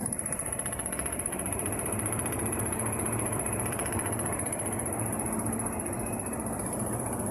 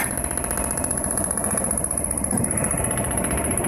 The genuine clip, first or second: second